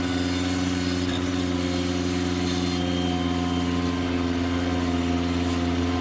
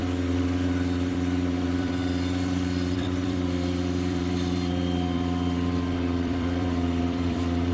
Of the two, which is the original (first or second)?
first